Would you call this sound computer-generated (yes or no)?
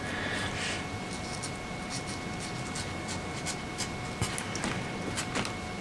no